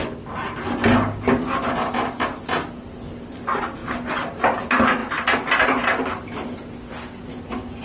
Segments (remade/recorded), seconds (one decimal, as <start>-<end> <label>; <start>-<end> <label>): 0.0-7.8 recorded